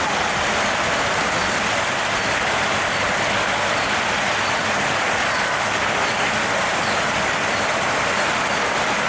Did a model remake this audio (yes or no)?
no